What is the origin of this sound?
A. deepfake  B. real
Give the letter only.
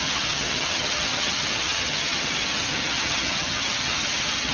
A